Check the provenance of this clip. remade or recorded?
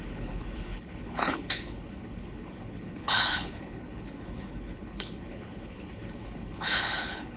remade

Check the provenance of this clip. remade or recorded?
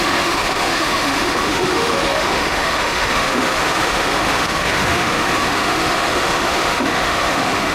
remade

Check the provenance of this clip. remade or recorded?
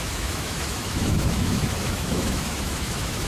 remade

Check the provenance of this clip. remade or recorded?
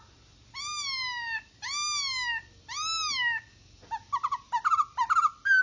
recorded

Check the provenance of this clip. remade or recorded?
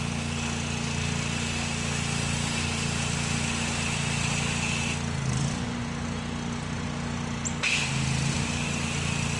recorded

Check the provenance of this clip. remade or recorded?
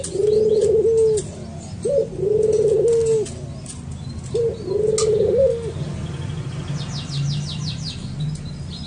recorded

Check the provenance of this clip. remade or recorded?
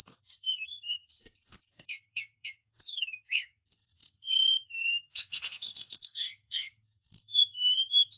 remade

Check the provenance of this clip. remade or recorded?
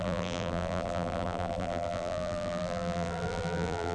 remade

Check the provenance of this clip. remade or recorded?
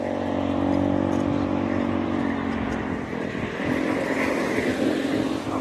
recorded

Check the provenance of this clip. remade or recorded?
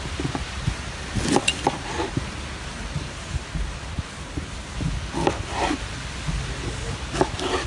recorded